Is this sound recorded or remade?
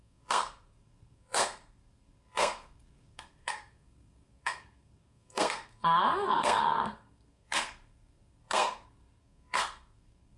remade